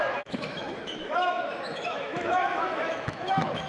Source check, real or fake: fake